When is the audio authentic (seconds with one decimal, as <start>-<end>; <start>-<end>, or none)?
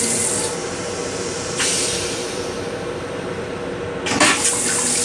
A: 0.0-0.6; 3.6-5.0